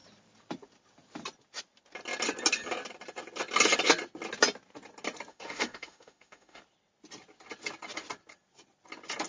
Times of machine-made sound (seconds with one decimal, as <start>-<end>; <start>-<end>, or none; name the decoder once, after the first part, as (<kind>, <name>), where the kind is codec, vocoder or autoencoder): 5.3-6.6 (autoencoder, DAC-VAE)